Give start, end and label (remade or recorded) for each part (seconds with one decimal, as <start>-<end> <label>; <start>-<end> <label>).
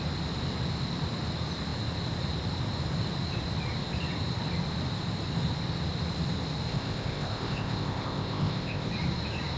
0.0-6.7 recorded; 6.7-8.9 remade; 8.9-9.6 recorded